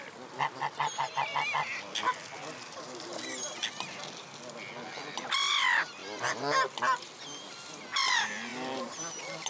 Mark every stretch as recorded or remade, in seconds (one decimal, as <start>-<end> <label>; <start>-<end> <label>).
0.0-8.5 recorded; 8.5-9.5 remade